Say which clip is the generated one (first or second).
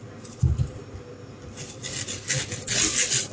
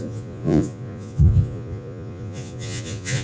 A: second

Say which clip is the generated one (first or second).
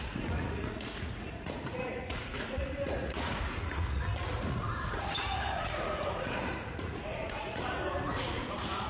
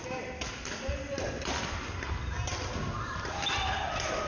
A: first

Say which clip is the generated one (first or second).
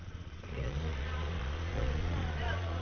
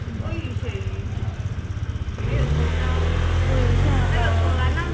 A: first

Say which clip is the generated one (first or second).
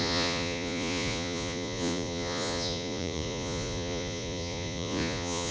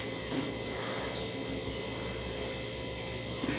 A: first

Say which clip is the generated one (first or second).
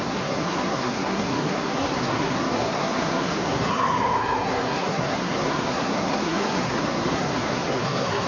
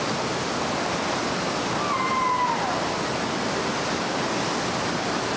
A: first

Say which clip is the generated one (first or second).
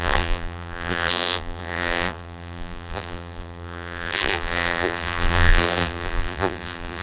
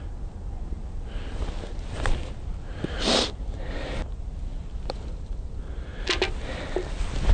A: first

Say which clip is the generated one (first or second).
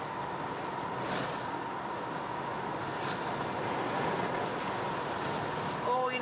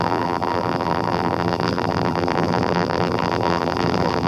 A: second